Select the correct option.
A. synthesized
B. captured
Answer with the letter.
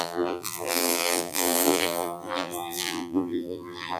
A